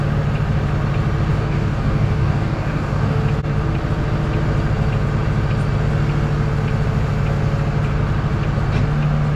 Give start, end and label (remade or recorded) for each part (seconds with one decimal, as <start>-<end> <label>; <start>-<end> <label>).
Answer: 0.0-1.3 recorded; 1.3-3.2 remade; 3.2-9.4 recorded